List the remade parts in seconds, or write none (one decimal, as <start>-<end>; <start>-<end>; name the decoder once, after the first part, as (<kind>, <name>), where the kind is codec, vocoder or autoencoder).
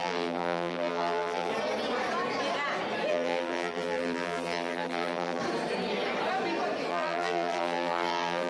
0.0-1.5 (vocoder, BigVGAN v2); 3.1-5.4; 6.9-8.5